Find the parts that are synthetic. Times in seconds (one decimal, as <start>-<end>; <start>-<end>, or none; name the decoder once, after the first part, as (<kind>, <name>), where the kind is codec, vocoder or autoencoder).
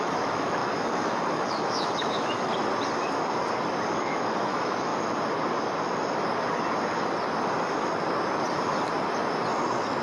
0.0-2.5 (autoencoder, DAC-VAE); 4.0-4.9